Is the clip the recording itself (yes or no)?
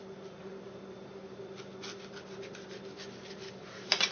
yes